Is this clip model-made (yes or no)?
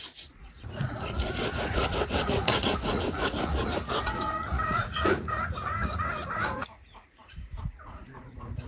yes